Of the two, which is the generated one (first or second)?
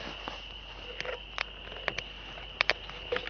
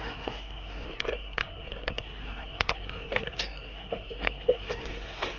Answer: second